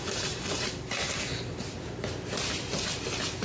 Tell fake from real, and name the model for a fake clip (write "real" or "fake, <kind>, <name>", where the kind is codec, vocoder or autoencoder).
real